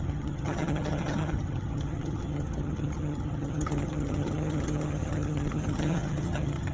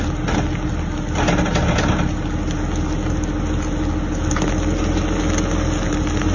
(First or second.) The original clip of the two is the second